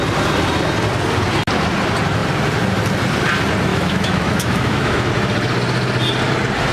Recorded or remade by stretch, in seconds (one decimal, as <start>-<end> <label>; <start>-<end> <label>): 0.0-3.7 recorded; 3.7-5.1 remade; 5.1-6.7 recorded